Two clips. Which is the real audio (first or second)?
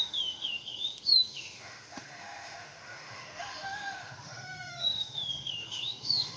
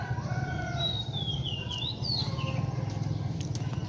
second